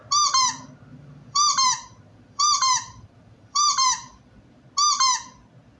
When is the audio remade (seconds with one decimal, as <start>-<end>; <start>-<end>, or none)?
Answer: 0.9-4.4